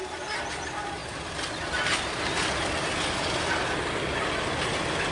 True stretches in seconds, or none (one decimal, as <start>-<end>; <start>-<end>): 0.0-5.1